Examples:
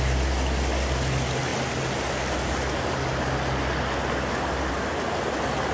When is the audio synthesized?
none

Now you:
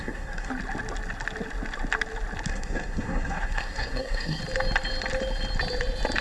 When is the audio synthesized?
0.0-0.5 (codec, SNAC); 2.5-4.4

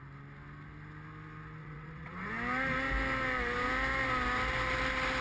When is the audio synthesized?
1.6-2.3 (vocoder, WaveNeXt)

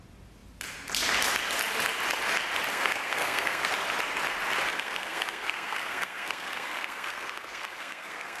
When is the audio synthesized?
2.7-3.7 (codec, SNAC); 4.7-8.4